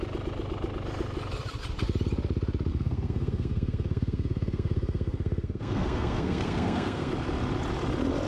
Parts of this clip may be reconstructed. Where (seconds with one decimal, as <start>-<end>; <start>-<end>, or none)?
2.7-7.1